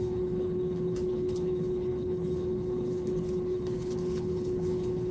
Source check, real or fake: fake